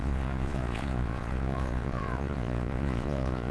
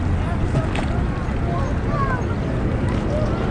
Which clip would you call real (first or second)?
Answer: second